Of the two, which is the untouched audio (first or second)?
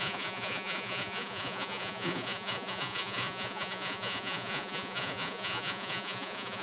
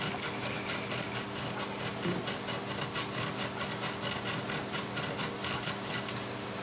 second